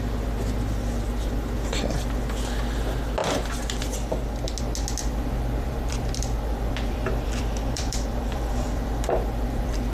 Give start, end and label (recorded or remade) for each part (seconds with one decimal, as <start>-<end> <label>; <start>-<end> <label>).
0.0-5.0 recorded; 5.0-9.9 remade